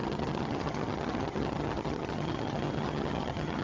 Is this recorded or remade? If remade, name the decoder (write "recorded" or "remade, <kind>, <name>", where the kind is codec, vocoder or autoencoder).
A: remade, vocoder, HiFi-GAN